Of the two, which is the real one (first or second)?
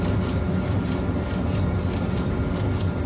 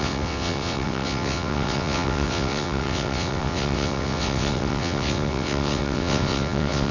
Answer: first